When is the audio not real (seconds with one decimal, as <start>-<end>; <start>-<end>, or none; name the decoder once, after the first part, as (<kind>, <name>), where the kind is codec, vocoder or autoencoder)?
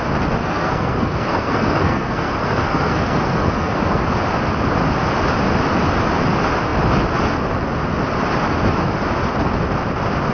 0.4-4.0 (codec, SNAC)